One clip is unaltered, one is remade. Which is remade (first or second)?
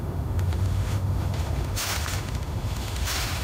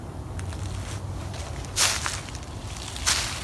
first